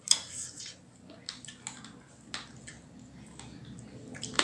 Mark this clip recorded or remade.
recorded